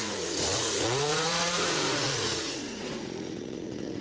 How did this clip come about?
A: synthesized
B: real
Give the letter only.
A